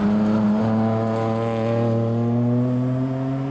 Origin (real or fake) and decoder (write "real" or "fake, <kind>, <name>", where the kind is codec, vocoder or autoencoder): real